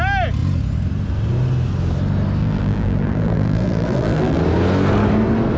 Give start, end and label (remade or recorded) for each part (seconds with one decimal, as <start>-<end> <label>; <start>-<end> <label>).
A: 0.0-2.4 recorded; 2.4-4.4 remade; 4.4-5.6 recorded